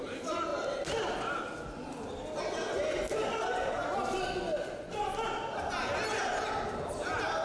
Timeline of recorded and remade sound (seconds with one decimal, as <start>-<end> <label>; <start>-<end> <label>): 0.0-7.4 recorded